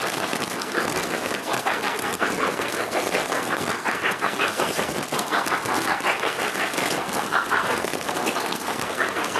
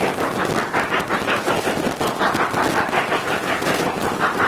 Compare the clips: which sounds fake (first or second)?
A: first